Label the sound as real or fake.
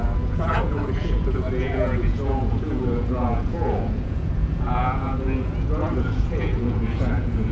fake